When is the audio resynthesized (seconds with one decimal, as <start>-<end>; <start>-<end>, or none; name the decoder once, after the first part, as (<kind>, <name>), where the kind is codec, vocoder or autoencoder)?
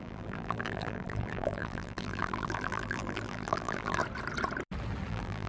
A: 0.0-4.0 (vocoder, BigVGAN v2); 5.1-5.5